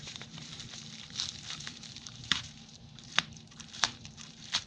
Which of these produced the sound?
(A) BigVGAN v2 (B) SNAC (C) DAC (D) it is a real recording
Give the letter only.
A